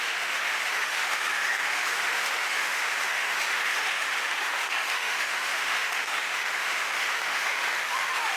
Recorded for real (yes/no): no